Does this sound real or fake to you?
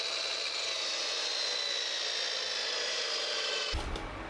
real